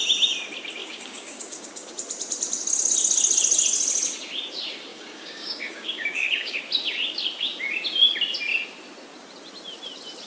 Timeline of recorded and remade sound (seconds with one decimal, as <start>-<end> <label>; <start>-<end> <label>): 0.0-0.8 recorded; 0.8-1.9 remade; 1.9-4.9 recorded; 4.9-6.6 remade; 6.6-10.3 recorded